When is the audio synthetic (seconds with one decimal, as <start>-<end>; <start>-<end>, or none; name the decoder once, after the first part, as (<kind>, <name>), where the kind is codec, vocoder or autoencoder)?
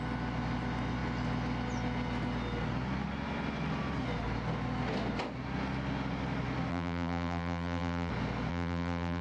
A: 6.7-8.1 (vocoder, BigVGAN v2); 8.5-9.2